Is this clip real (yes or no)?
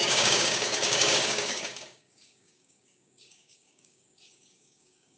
no